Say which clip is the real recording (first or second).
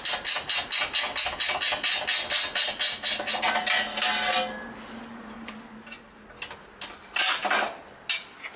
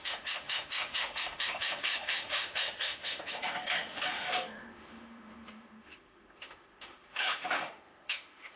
first